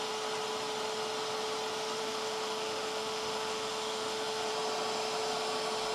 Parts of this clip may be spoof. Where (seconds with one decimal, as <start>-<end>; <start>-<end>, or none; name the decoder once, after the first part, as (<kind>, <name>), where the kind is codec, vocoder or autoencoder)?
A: 2.0-4.5 (autoencoder, DAC-VAE)